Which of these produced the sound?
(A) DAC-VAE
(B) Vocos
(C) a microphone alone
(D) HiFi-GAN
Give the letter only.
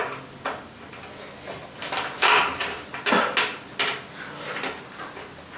C